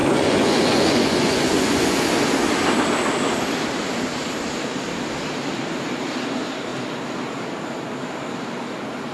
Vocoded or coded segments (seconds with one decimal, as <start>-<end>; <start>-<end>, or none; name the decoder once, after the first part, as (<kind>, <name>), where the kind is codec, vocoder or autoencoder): 0.0-2.1 (vocoder, Vocos)